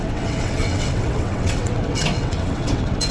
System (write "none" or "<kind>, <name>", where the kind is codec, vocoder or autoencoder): vocoder, WaveNeXt